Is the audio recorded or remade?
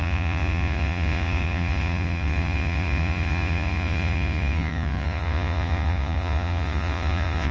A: remade